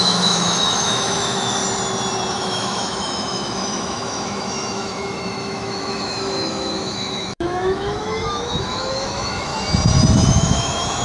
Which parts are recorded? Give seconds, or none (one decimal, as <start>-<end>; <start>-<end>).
1.6-2.4; 9.5-10.3